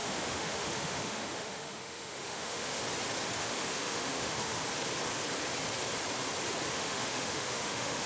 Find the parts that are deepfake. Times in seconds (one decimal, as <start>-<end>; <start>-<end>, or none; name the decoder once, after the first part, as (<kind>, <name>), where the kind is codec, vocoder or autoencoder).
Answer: 0.0-2.8 (autoencoder, DAC-VAE); 3.4-4.6; 6.7-8.1